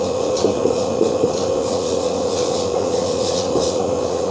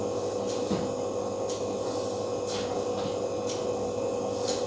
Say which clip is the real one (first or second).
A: second